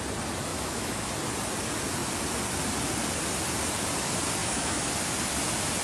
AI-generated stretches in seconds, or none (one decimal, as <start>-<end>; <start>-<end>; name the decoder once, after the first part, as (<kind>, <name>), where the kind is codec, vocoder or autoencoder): 0.5-1.1 (autoencoder, DAC-VAE); 4.4-4.9

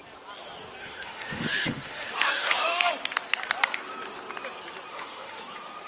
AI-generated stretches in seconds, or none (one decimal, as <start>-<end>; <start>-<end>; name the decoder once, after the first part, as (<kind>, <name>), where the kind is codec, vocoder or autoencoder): 0.8-2.9 (autoencoder, DAC-VAE); 4.9-5.4